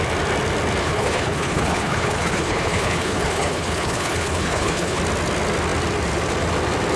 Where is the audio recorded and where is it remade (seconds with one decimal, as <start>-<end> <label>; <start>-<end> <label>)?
0.0-0.8 recorded; 0.8-5.0 remade; 5.0-7.0 recorded